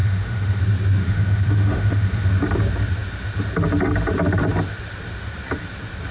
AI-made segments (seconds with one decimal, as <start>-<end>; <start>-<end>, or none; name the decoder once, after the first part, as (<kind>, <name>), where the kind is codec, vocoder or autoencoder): 0.0-0.6 (autoencoder, DAC-VAE); 1.0-2.3